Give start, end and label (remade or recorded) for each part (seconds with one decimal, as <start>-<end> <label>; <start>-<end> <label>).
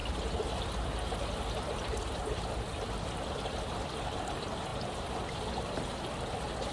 0.0-6.7 recorded